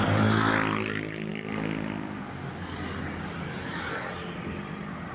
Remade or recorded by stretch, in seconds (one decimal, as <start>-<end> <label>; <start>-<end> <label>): 0.0-5.1 recorded